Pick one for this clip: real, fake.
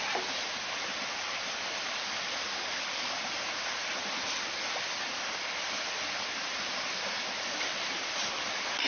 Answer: real